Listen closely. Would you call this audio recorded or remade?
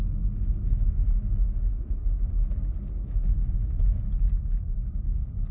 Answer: recorded